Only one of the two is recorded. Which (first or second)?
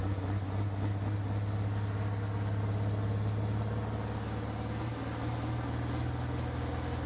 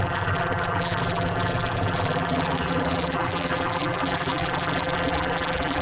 first